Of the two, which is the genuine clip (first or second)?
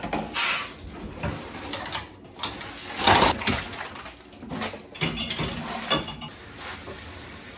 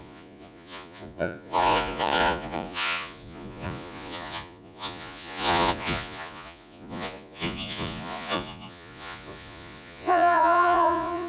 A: first